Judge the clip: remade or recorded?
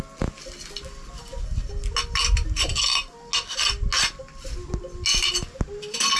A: recorded